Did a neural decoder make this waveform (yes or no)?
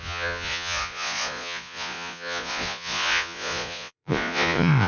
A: yes